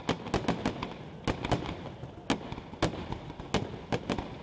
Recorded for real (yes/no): yes